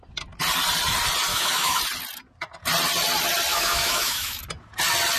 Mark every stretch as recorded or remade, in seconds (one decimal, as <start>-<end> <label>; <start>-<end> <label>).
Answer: 0.0-1.3 recorded; 1.3-1.8 remade; 1.8-3.5 recorded; 3.5-4.4 remade; 4.4-5.2 recorded